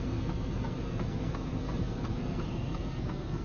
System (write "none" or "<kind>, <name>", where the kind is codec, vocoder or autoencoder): codec, SNAC